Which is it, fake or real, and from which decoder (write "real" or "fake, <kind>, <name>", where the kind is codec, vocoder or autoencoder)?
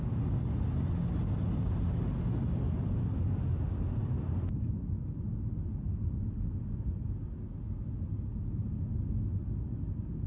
real